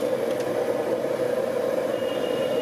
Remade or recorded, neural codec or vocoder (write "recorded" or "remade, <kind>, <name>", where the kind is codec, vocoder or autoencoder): recorded